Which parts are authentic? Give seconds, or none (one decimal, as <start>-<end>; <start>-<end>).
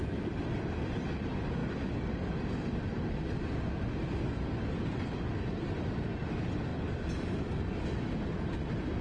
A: 0.0-9.0